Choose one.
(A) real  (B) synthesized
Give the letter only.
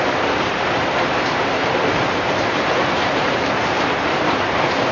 B